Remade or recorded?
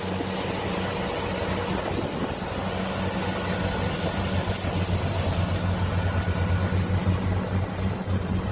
recorded